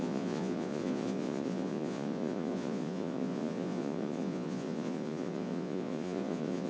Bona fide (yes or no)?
no